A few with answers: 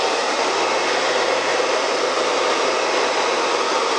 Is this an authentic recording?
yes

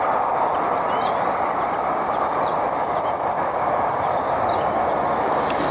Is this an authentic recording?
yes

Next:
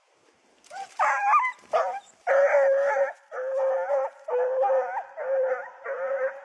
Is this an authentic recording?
yes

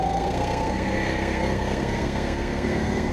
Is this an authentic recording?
no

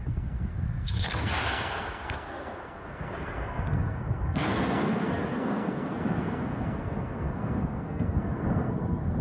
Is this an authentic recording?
no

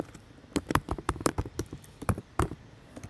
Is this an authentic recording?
no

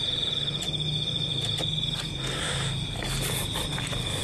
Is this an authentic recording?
yes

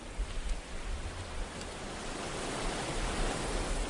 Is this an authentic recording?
yes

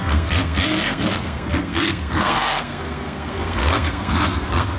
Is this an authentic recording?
no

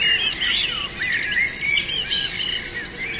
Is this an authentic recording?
yes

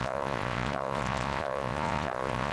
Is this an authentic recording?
no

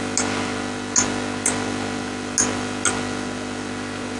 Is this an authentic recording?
yes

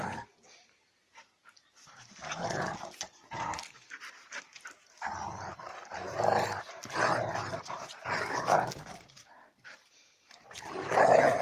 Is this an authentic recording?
no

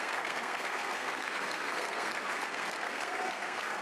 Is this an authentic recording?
no